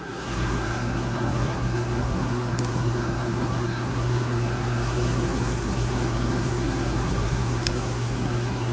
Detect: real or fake fake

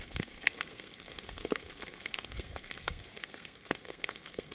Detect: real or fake fake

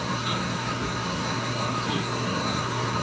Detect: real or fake fake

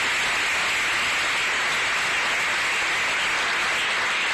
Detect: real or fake real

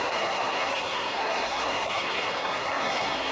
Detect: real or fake fake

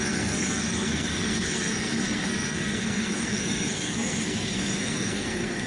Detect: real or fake fake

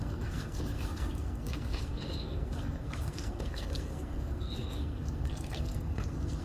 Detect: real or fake fake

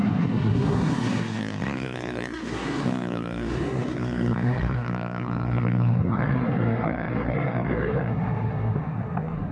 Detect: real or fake fake